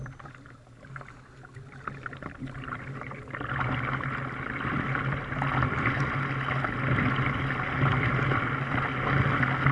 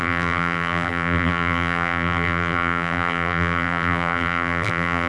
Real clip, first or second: first